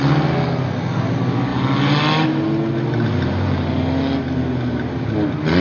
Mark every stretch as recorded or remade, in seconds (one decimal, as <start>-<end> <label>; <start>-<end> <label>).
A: 0.0-5.6 recorded